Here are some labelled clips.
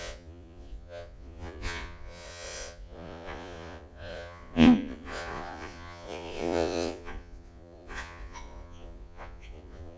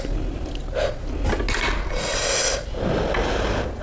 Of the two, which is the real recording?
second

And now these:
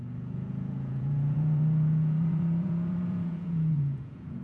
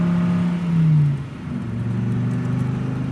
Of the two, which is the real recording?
second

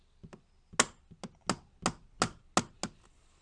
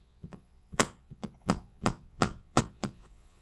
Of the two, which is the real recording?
first